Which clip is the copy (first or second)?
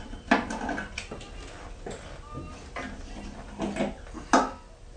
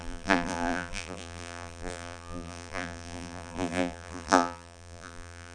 second